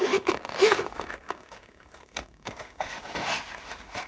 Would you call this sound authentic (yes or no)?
no